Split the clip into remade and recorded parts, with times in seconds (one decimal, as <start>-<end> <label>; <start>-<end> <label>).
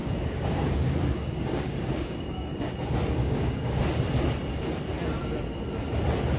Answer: 0.0-2.7 remade; 2.7-3.2 recorded; 3.2-3.8 remade; 3.8-6.4 recorded